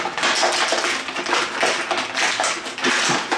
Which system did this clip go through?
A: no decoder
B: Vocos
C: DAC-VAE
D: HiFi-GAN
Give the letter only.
A